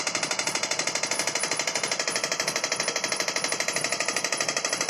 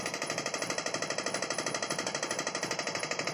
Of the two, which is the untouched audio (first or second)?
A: second